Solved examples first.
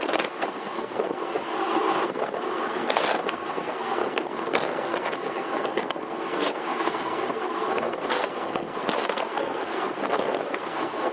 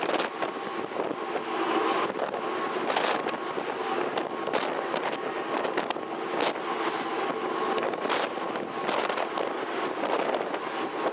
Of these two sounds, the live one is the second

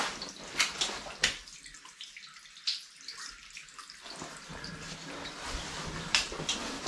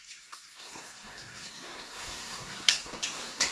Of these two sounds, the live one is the first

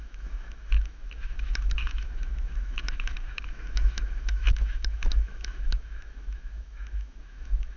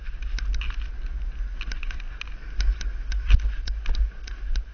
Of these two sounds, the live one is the second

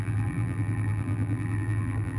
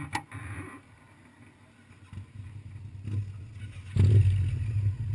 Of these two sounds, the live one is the second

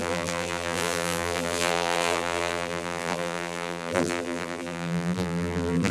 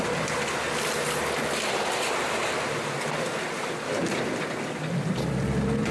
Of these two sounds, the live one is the second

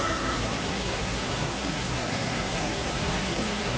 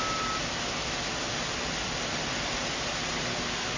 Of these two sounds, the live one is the second